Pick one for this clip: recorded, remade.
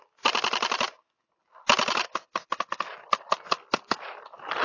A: recorded